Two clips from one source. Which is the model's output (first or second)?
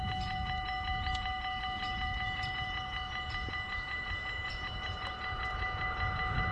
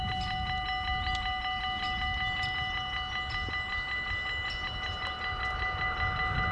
first